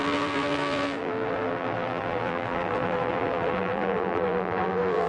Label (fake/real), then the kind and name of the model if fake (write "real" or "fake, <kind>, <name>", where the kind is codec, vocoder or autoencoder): fake, vocoder, BigVGAN v2